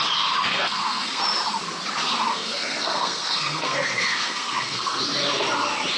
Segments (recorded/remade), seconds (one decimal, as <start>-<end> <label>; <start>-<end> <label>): 0.0-0.5 recorded; 0.5-1.2 remade; 1.2-2.3 recorded; 2.3-5.0 remade; 5.0-6.0 recorded